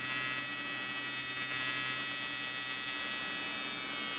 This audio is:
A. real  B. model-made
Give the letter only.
A